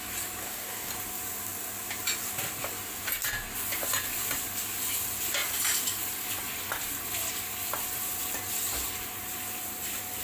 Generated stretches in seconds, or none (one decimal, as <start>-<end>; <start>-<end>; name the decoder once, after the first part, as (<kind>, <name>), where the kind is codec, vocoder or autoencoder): 0.4-0.9 (codec, DAC)